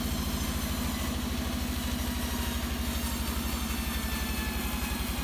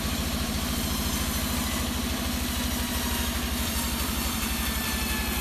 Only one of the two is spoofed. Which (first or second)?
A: second